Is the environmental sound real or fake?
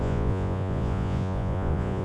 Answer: fake